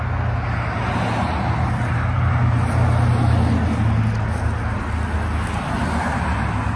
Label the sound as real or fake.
real